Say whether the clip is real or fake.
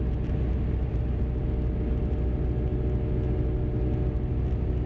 real